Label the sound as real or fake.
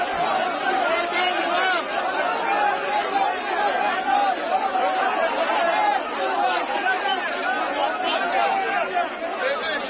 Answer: real